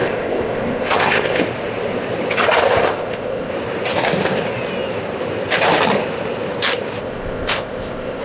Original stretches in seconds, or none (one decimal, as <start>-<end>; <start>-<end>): 1.4-2.8; 3.5-7.0